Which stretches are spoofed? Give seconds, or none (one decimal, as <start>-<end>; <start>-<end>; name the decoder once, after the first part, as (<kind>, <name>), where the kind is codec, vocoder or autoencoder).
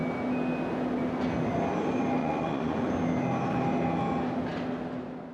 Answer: 2.2-2.9 (vocoder, Vocos)